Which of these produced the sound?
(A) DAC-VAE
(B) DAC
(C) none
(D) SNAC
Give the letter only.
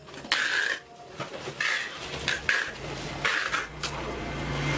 C